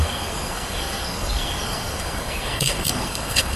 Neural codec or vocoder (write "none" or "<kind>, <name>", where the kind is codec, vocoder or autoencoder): codec, SNAC